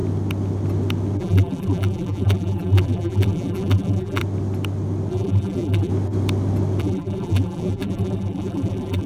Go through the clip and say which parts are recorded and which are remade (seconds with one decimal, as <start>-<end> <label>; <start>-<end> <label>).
0.0-1.2 recorded; 1.2-4.2 remade; 4.2-5.1 recorded; 5.1-5.9 remade; 5.9-6.8 recorded; 6.8-9.1 remade